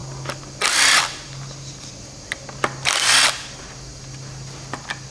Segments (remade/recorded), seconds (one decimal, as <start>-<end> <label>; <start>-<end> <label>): 0.0-5.1 recorded